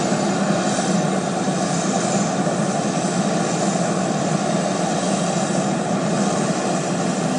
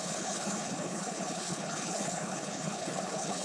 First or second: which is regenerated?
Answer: second